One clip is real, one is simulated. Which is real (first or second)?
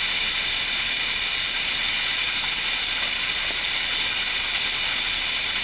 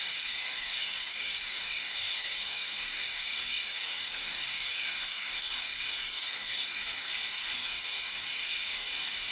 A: first